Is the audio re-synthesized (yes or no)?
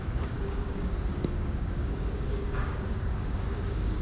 yes